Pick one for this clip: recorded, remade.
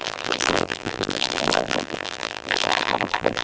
remade